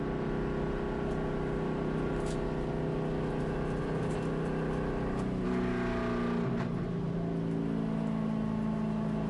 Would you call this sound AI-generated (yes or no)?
no